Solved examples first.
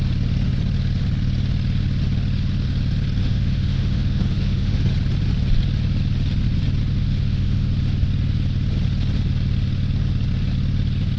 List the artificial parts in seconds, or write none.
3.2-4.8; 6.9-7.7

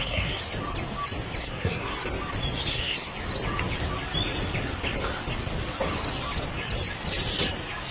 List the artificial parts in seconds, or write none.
0.0-0.4; 1.4-1.9; 2.7-3.1

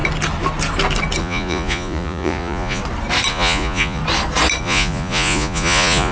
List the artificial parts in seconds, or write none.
1.2-2.8; 3.3-4.0; 4.6-6.1

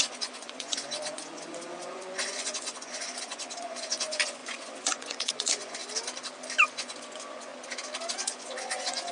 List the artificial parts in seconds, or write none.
0.0-5.8; 6.7-7.5; 8.1-9.1

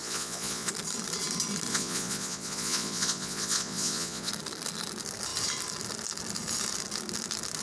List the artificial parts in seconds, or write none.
0.0-0.7; 1.7-4.3

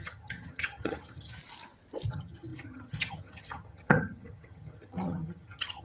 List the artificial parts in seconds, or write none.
0.0-1.4; 2.1-5.8